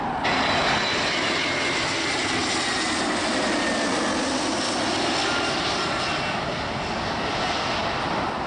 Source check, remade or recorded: recorded